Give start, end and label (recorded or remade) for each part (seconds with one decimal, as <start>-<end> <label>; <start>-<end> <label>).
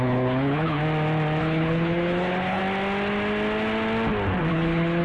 0.0-0.8 remade; 0.8-1.4 recorded; 1.4-2.6 remade; 2.6-4.5 recorded; 4.5-5.0 remade